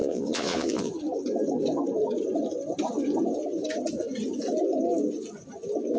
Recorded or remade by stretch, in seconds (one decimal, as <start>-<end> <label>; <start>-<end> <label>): 0.0-0.9 remade; 0.9-6.0 recorded